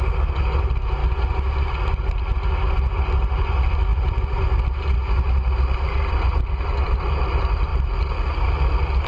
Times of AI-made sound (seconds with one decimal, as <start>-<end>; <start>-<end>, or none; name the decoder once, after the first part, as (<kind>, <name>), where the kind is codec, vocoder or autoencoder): none